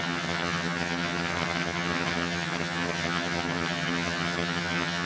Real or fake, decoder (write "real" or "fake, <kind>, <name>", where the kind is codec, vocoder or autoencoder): fake, vocoder, HiFi-GAN